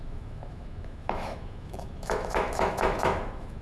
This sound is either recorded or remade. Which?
remade